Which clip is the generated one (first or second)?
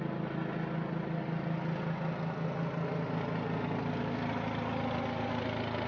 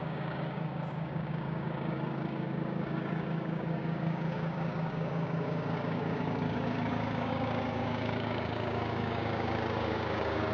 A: second